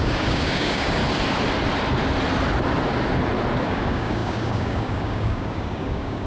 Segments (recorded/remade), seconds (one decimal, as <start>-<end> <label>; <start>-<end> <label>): 0.0-1.0 remade; 1.0-3.6 recorded; 3.6-6.3 remade